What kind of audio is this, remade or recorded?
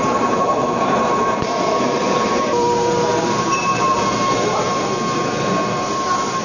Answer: remade